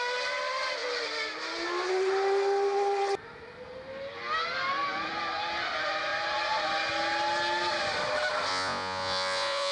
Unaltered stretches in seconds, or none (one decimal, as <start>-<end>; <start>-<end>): 0.0-8.5